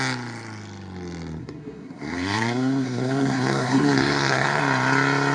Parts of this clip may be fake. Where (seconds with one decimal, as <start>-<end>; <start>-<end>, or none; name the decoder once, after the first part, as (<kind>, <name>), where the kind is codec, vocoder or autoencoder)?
1.4-4.6 (codec, SNAC)